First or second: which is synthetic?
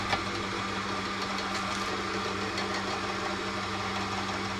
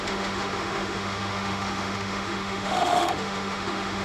second